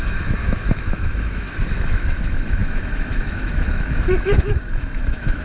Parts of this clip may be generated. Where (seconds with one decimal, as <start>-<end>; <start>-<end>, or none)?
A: 0.0-5.4